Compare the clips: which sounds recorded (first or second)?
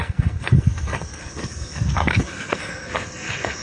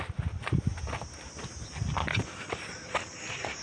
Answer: second